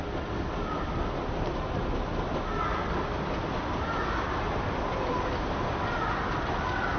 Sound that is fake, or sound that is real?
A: real